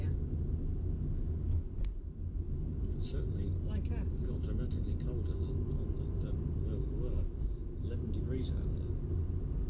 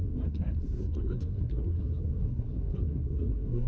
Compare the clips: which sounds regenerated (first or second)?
second